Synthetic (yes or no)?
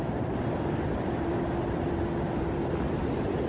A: yes